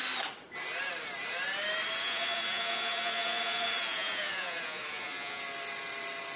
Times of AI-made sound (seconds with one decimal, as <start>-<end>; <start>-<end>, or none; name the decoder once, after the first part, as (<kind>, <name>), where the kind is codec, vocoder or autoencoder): 2.0-5.4 (vocoder, Vocos)